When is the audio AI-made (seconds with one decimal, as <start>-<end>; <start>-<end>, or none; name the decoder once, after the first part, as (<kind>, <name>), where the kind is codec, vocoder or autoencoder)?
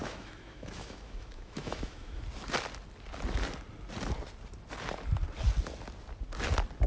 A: 0.0-2.2 (autoencoder, DAC-VAE)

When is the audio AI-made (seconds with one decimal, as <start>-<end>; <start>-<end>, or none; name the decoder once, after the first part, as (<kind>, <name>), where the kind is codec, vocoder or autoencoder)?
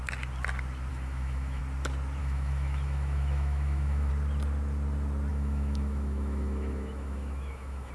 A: 0.9-1.6 (autoencoder, DAC-VAE); 2.2-4.1; 5.3-7.9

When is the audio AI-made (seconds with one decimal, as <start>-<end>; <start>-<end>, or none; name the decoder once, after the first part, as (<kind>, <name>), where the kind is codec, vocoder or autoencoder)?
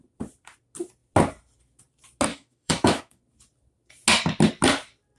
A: 2.3-3.2 (autoencoder, DAC-VAE)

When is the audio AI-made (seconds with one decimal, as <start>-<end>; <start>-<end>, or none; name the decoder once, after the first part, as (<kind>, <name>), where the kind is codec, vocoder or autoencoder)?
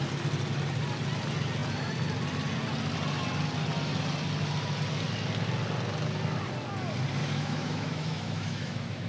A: 7.2-9.1 (autoencoder, DAC-VAE)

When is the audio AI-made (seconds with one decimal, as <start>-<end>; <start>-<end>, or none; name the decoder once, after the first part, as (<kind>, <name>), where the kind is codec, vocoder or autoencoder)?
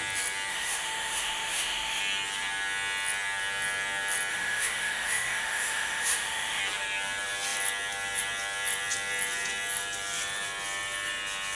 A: 0.5-2.0 (autoencoder, DAC-VAE); 4.3-6.6